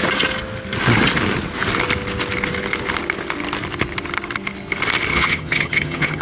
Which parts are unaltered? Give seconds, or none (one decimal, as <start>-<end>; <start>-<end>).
0.0-5.1